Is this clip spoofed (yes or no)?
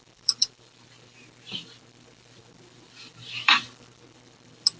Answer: yes